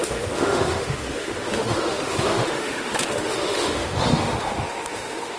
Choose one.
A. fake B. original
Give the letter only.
A